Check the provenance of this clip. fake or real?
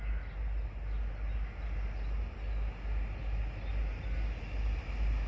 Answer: real